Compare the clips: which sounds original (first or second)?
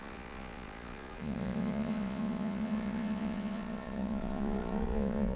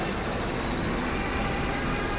second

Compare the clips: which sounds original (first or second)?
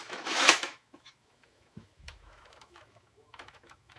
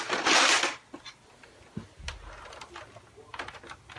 second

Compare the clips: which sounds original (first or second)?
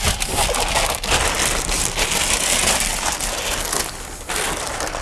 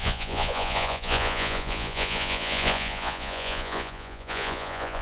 first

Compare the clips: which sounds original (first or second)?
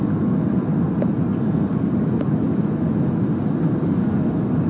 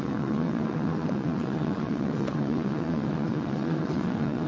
first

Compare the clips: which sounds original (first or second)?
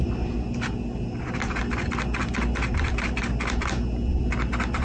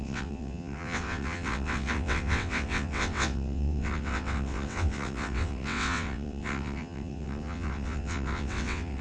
first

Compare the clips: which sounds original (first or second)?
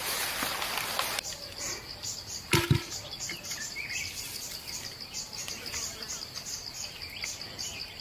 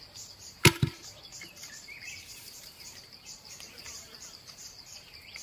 first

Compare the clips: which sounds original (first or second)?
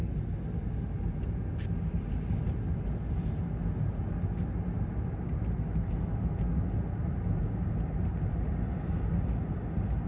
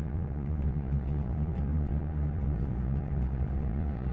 first